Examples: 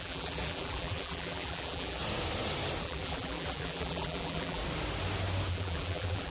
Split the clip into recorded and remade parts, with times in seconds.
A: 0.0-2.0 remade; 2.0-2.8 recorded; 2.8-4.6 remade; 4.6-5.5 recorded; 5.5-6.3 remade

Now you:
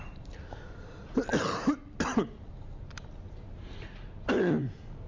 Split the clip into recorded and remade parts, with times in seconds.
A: 0.0-1.3 remade; 1.3-2.5 recorded; 2.5-3.6 remade; 3.6-4.3 recorded; 4.3-5.1 remade

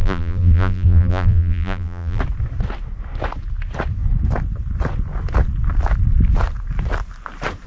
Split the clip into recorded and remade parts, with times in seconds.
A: 0.0-2.2 remade; 2.2-7.7 recorded